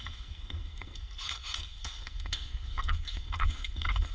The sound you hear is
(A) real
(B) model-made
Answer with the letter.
B